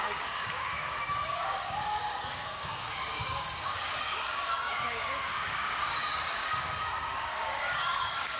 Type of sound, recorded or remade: remade